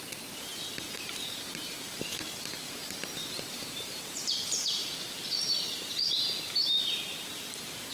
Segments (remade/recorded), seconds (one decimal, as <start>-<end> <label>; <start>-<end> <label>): 0.0-2.8 remade; 2.8-3.5 recorded; 3.5-7.9 remade

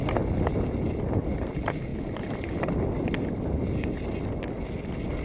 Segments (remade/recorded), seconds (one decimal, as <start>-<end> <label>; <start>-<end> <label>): 0.0-5.2 recorded

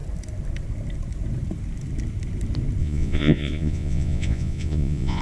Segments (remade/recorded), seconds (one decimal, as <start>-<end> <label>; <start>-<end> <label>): 0.0-2.8 recorded; 2.8-5.2 remade

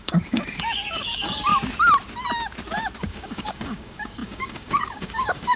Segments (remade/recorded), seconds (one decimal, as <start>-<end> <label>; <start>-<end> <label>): 0.0-1.5 remade; 1.5-3.0 recorded; 3.0-5.6 remade

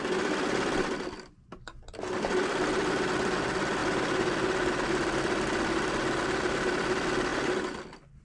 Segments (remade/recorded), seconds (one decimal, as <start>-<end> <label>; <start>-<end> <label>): 0.0-8.2 recorded

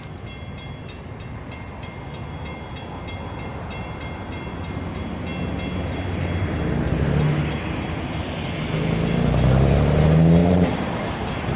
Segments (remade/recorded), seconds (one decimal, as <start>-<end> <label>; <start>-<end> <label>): 0.0-3.5 recorded; 3.5-4.0 remade; 4.0-10.4 recorded; 10.4-11.6 remade